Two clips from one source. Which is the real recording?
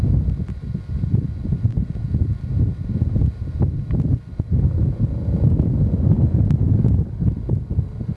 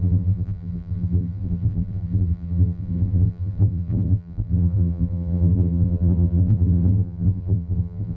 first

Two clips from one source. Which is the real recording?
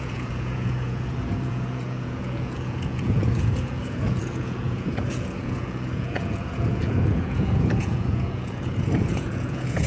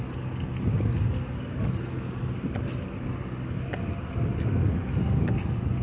second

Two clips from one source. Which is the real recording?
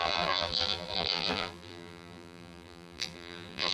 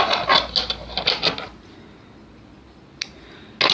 second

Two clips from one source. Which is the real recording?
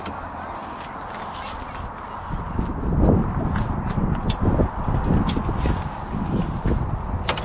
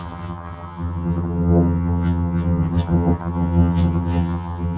first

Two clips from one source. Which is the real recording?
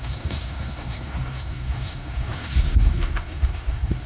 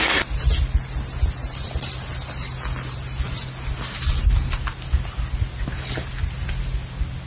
second